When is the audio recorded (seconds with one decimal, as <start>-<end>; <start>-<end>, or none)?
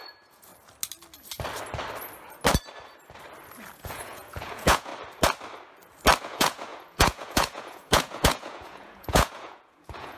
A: 0.5-3.7; 4.9-6.2